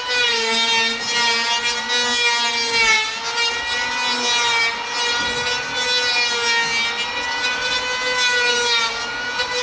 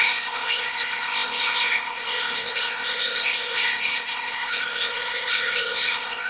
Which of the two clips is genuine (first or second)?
first